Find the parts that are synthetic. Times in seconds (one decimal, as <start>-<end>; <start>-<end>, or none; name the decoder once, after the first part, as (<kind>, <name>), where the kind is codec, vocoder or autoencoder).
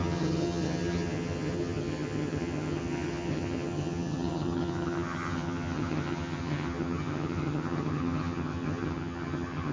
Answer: 0.0-9.7 (vocoder, HiFi-GAN)